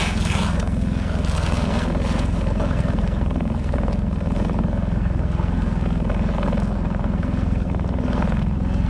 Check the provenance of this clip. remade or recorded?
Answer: remade